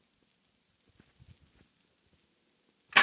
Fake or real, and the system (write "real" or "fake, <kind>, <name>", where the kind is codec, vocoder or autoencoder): real